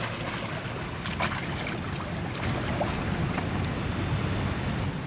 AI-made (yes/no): no